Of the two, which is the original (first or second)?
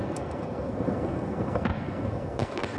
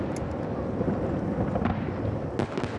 second